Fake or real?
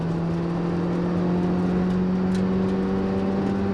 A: real